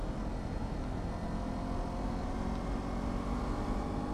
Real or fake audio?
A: real